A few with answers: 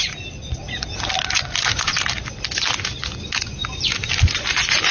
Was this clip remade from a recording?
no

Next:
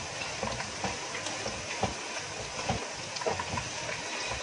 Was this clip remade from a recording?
no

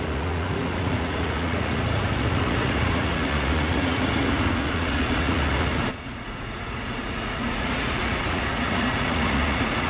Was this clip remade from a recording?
yes